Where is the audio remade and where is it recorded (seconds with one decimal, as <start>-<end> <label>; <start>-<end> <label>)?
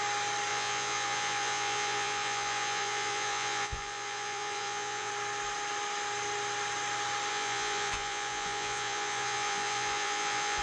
0.0-0.5 recorded; 0.5-5.1 remade; 5.1-7.3 recorded; 7.3-10.6 remade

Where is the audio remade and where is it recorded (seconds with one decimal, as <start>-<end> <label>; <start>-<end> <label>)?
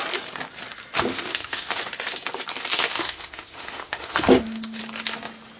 0.0-1.1 recorded; 1.1-1.8 remade; 1.8-2.7 recorded; 2.7-4.8 remade; 4.8-5.6 recorded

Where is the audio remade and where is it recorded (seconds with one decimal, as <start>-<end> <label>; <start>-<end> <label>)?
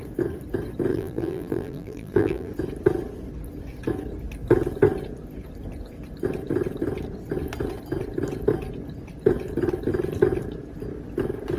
0.0-0.9 recorded; 0.9-2.5 remade; 2.5-11.6 recorded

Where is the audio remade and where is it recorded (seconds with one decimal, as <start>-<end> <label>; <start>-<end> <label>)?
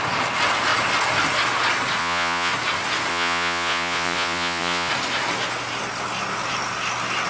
0.0-2.0 recorded; 2.0-2.5 remade; 2.5-3.1 recorded; 3.1-4.9 remade; 4.9-7.3 recorded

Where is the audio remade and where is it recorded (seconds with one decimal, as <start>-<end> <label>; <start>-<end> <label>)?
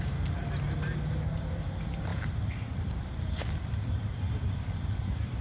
0.0-2.1 recorded; 2.1-5.4 remade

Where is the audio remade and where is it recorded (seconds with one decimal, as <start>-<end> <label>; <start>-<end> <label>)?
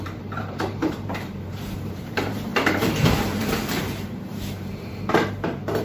0.0-5.8 remade